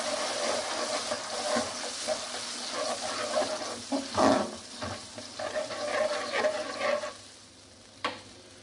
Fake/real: real